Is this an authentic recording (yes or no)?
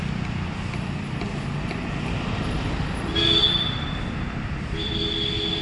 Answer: yes